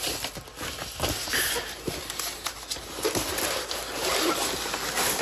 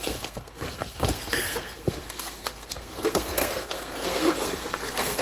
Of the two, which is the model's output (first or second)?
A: second